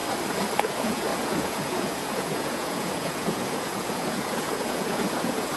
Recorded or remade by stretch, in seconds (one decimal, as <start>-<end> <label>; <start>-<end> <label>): 0.0-0.6 recorded; 0.6-5.6 remade